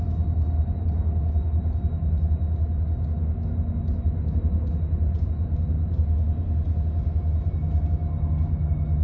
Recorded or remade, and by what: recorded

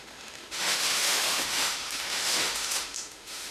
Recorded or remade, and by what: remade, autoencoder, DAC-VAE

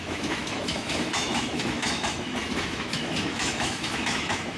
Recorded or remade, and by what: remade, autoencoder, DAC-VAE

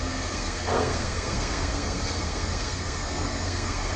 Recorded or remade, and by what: remade, codec, SNAC